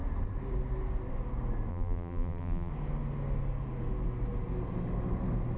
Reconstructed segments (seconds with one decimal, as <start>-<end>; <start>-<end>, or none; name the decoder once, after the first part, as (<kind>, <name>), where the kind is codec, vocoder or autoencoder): 1.7-2.7 (vocoder, BigVGAN v2)